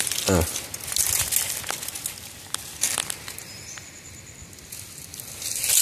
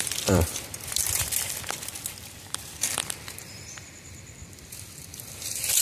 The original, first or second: first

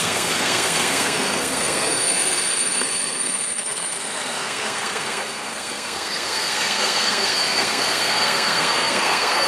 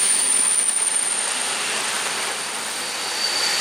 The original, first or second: second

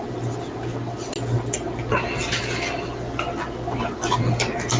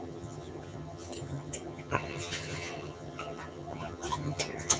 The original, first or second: first